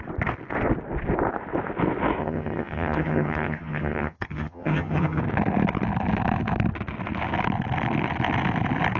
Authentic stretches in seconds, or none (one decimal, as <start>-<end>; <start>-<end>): 0.0-2.2; 5.2-9.0